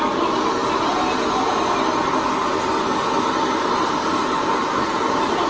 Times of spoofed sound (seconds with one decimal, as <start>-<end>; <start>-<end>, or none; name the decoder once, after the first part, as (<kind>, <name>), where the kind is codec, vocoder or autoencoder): none